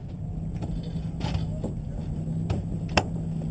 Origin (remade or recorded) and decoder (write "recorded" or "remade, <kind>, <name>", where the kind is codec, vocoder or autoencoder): recorded